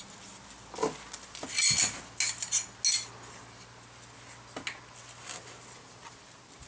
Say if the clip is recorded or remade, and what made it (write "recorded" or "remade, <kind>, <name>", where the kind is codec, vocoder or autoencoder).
recorded